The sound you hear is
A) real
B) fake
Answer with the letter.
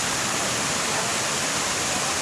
A